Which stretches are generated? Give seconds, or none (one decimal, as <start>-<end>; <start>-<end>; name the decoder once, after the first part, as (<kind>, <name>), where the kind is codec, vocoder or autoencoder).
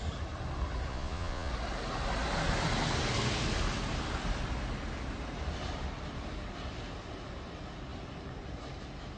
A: 0.9-1.5 (vocoder, Vocos)